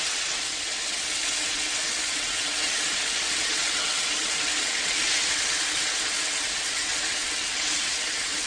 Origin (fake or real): fake